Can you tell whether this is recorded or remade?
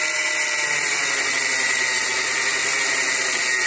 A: recorded